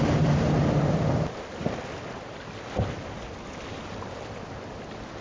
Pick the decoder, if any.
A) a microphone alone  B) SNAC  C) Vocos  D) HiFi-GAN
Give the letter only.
A